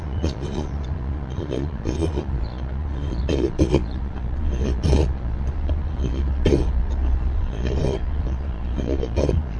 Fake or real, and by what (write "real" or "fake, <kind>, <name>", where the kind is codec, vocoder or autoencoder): fake, vocoder, Vocos